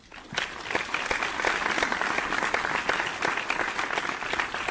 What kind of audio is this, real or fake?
real